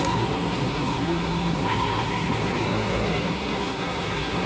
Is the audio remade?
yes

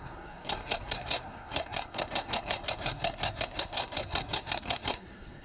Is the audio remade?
yes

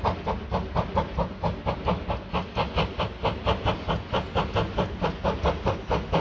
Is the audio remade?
no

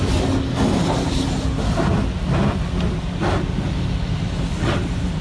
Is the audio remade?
no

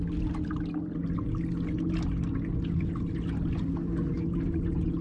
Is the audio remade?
no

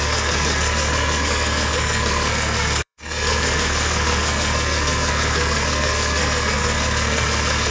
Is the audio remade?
yes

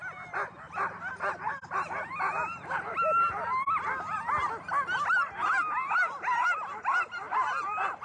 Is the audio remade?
no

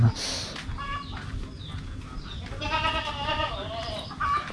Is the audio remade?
no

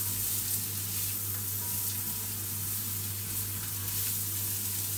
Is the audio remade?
no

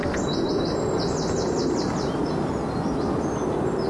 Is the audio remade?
no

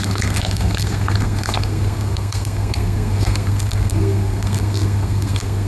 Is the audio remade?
yes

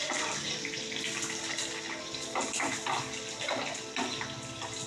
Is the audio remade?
no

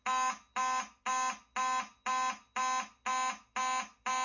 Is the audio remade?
no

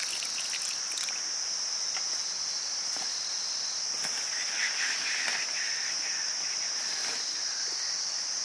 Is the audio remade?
no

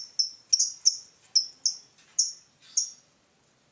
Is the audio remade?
no